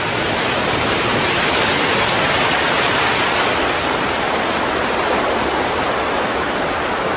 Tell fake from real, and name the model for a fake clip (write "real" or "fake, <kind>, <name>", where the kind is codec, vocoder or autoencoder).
real